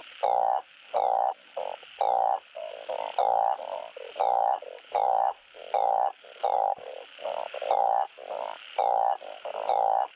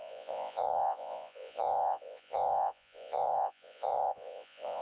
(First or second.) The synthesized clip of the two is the second